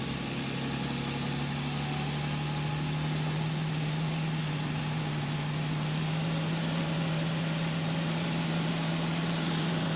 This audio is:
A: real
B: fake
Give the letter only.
A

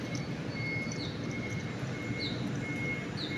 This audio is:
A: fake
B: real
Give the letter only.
B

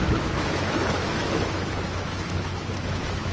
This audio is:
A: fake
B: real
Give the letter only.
A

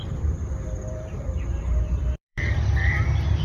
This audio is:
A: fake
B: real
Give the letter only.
A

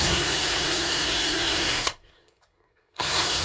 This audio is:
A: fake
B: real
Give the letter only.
A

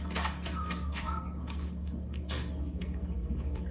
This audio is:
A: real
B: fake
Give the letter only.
B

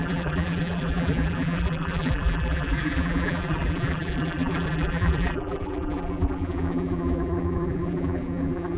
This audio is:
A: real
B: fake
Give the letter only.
B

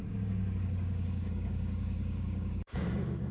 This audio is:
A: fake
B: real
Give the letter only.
A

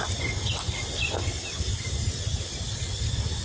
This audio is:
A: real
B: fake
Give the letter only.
A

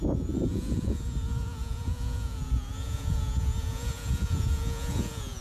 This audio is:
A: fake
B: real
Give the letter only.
A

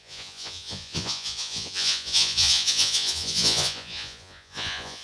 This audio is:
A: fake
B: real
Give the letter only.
A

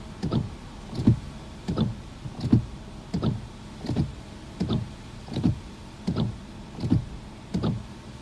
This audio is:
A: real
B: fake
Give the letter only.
A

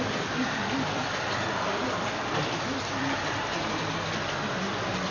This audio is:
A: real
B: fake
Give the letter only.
A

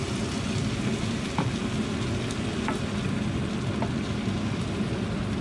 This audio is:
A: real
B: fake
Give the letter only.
A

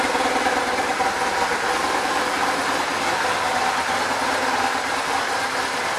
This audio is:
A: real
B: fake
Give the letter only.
A